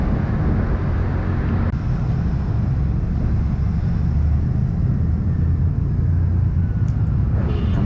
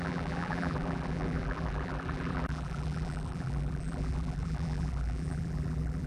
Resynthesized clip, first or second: second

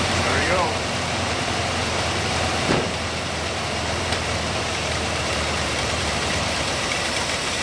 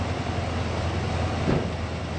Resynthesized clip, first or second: first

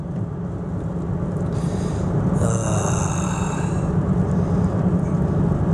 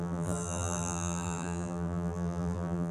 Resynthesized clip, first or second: second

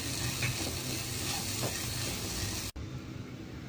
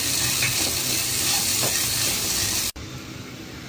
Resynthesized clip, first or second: second